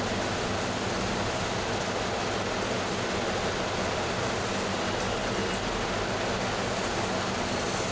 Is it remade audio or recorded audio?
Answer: recorded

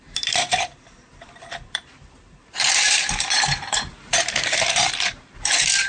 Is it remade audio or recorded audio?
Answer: remade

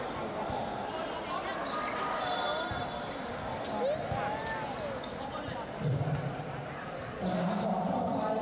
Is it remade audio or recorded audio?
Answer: recorded